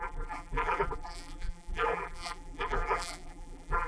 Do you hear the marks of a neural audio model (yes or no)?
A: yes